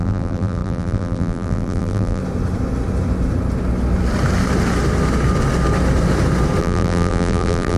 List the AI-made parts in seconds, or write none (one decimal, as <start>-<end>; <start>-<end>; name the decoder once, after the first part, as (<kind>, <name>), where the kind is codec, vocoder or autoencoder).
0.0-2.2 (vocoder, BigVGAN v2); 6.6-7.8